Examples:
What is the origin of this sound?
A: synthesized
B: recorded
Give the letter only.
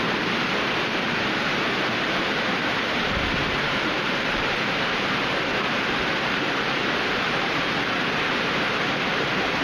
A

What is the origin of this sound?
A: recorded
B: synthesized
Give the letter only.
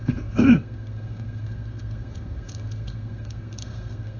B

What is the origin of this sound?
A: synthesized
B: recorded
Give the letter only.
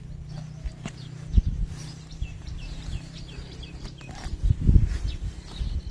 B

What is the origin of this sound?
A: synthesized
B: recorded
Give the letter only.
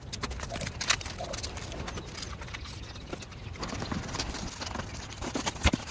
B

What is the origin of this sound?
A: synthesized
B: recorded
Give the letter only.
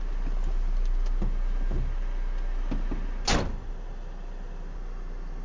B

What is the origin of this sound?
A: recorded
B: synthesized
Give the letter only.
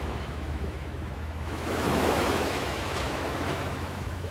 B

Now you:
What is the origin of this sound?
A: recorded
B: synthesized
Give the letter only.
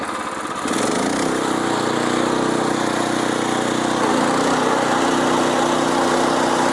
A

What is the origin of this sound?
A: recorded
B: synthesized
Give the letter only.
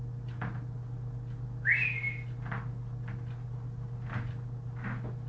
A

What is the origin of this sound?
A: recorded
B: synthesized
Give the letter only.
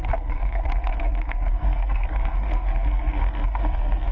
B